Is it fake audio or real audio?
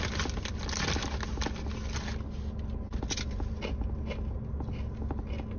real